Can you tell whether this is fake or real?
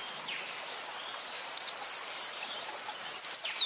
real